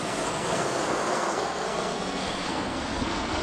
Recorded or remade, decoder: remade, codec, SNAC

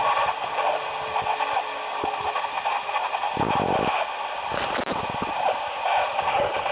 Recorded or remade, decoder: recorded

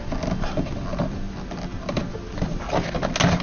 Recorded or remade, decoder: recorded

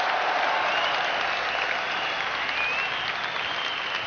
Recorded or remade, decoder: recorded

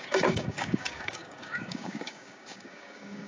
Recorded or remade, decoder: remade, codec, DAC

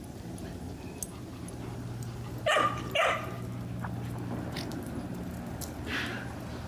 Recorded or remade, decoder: recorded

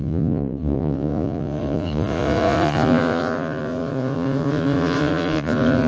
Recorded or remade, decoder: remade, vocoder, Vocos